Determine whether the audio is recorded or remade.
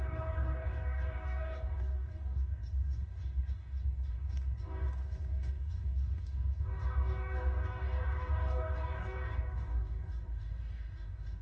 remade